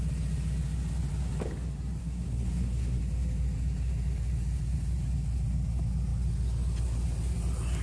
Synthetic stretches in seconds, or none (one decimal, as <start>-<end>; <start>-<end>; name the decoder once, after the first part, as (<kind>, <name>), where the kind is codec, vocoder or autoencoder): 2.0-3.0 (codec, SNAC)

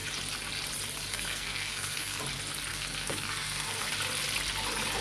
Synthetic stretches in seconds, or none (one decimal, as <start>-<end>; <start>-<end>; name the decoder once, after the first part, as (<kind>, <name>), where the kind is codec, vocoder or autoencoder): 1.1-2.2 (codec, SNAC); 2.7-3.9

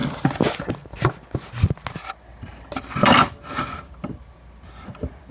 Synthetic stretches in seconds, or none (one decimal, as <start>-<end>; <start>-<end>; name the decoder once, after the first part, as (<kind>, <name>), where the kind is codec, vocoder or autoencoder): none

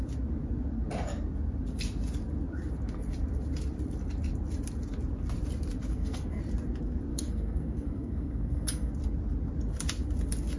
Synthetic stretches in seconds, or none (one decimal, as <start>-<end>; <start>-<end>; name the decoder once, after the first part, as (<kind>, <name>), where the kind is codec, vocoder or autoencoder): 5.9-6.4 (codec, SNAC); 7.1-8.9

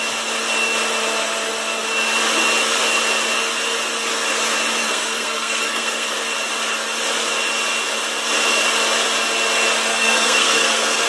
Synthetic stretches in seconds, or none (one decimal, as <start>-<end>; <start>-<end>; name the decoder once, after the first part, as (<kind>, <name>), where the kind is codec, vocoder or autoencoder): 4.8-6.1 (codec, SNAC); 9.9-11.1

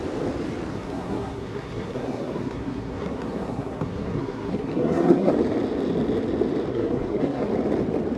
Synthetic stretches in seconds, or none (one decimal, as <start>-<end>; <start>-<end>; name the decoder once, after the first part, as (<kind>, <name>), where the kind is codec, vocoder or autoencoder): 0.7-5.3 (codec, SNAC); 6.7-7.5

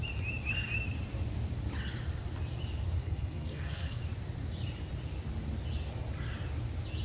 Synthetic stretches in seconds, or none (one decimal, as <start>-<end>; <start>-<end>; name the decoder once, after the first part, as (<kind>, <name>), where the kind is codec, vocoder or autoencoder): 3.0-4.0 (codec, SNAC)

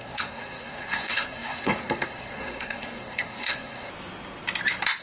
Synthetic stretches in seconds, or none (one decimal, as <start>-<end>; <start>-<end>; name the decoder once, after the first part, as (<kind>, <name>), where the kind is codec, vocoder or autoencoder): 0.0-3.9 (codec, SNAC)